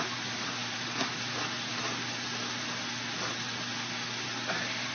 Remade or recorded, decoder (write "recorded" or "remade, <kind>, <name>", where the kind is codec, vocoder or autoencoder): recorded